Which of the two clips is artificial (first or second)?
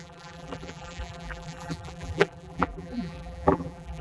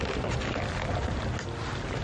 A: first